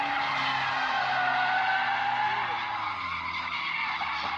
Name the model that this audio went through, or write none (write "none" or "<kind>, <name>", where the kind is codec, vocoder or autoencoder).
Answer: none